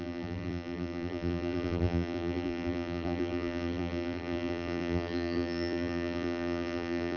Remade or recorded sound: remade